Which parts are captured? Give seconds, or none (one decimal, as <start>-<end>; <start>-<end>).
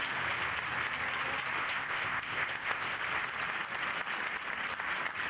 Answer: 0.0-1.6; 3.0-5.3